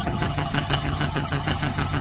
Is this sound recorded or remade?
remade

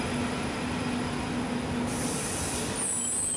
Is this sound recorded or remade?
recorded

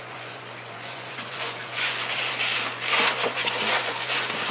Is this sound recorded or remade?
remade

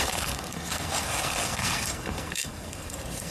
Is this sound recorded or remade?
remade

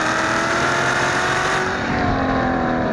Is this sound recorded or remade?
remade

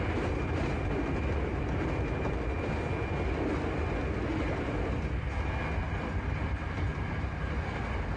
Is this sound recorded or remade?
recorded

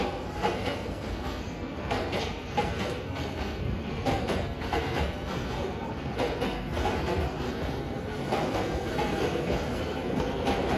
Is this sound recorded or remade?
remade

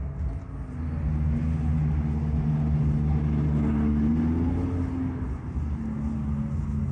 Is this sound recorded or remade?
recorded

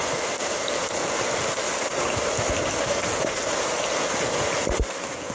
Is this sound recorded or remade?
recorded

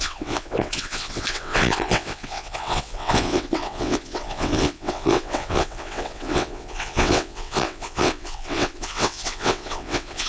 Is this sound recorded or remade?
remade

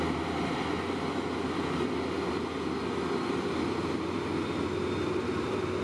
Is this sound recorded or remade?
remade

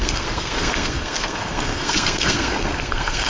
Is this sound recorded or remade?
remade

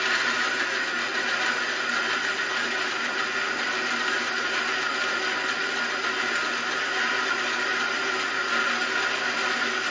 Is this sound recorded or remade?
recorded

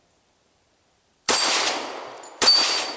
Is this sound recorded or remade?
remade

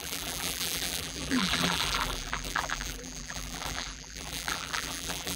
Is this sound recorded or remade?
remade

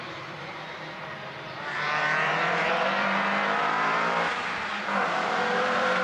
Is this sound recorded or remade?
remade